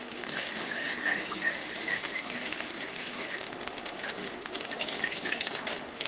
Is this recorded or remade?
remade